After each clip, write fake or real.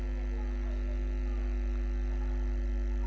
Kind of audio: real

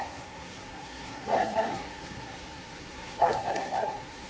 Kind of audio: fake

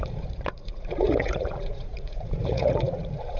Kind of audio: fake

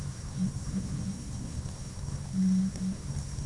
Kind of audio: fake